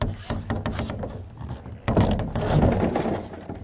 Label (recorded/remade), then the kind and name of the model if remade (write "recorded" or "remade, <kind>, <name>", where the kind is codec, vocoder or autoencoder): recorded